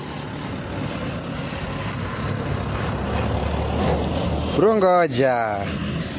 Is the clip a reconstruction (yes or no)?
no